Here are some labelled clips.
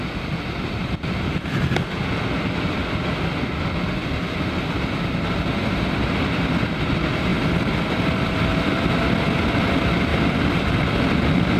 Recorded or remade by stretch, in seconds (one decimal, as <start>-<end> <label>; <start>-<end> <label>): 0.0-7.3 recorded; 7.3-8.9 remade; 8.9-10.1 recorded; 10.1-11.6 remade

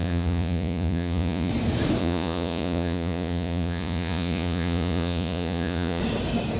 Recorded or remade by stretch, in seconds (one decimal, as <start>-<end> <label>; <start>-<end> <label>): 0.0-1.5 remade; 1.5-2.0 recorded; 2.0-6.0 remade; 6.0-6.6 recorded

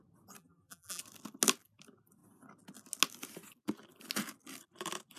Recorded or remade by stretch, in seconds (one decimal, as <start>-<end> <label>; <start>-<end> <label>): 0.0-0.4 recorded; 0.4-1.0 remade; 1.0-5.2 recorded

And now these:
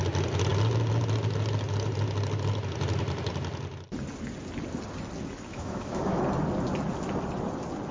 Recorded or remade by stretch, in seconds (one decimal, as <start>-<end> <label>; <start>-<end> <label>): 0.0-5.5 recorded; 5.5-6.2 remade; 6.2-7.9 recorded

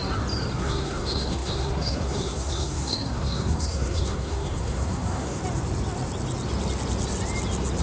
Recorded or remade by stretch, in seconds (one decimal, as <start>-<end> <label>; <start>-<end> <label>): 0.0-0.6 recorded; 0.6-5.4 remade; 5.4-7.8 recorded

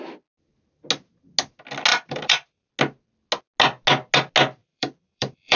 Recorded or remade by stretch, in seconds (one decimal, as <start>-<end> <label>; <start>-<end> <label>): 0.0-1.9 recorded; 1.9-2.7 remade; 2.7-4.6 recorded; 4.6-5.6 remade

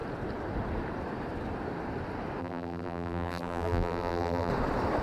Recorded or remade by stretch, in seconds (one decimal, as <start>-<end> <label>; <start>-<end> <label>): 0.0-2.4 recorded; 2.4-4.5 remade; 4.5-5.0 recorded

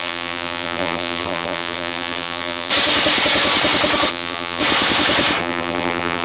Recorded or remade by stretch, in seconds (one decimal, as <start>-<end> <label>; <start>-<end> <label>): 0.0-2.7 remade; 2.7-4.1 recorded; 4.1-4.6 remade; 4.6-5.4 recorded; 5.4-6.2 remade